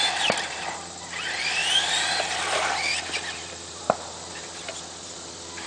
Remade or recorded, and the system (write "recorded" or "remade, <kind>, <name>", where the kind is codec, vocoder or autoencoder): remade, vocoder, BigVGAN v2